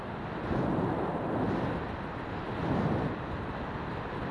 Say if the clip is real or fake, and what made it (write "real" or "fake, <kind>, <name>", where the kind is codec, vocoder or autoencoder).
real